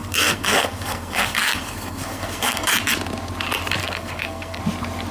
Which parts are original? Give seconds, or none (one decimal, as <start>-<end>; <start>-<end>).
2.7-3.8; 4.6-5.1